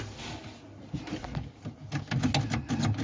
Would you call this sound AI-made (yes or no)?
no